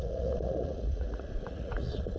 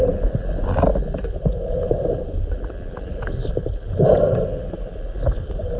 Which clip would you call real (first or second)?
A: second